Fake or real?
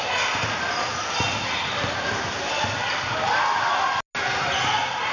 real